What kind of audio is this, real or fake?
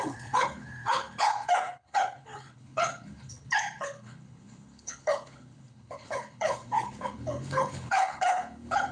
fake